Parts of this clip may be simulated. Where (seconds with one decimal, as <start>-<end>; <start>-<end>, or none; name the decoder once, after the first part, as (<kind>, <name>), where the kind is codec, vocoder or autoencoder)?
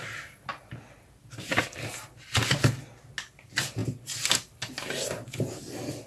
none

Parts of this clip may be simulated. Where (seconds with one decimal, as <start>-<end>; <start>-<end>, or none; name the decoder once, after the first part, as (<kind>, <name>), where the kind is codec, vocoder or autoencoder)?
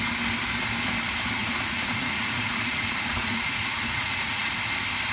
1.4-4.5 (vocoder, Vocos)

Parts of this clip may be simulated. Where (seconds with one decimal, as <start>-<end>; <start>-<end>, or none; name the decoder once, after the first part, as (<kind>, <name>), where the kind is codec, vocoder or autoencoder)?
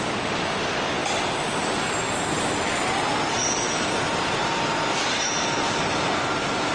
none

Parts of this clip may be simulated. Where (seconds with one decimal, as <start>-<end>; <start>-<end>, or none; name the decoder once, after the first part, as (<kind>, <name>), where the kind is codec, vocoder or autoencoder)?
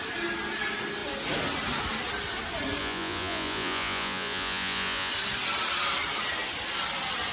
2.8-5.1 (vocoder, Vocos)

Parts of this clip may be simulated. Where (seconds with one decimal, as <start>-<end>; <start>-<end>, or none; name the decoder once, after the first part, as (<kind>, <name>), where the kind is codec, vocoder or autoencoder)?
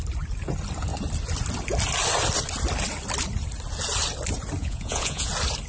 4.6-5.3 (vocoder, Vocos)